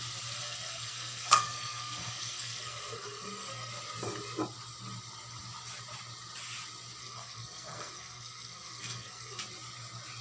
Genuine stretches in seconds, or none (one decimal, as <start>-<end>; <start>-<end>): 0.0-0.4; 3.7-7.0; 9.4-10.2